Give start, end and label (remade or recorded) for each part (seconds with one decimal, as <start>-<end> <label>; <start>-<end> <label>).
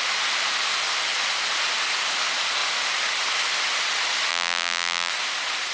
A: 0.0-4.3 recorded; 4.3-5.1 remade; 5.1-5.7 recorded